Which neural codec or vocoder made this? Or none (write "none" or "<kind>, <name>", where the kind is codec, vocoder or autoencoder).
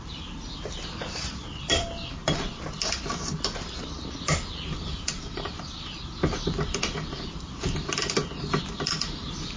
vocoder, BigVGAN v2